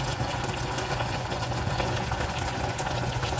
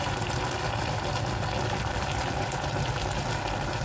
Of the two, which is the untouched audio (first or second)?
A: second